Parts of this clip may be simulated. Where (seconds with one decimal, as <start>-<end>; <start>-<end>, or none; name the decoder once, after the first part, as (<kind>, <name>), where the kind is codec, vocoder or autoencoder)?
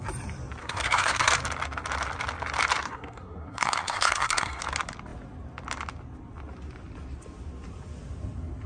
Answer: 0.6-1.3 (codec, SNAC); 2.8-4.6